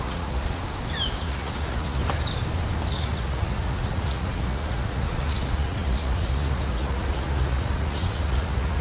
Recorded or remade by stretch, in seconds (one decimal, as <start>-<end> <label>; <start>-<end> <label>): 0.0-0.6 remade; 0.6-1.2 recorded; 1.2-2.0 remade; 2.0-2.9 recorded; 2.9-8.8 remade